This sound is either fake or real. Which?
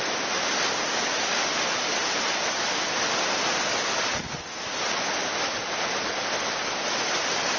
real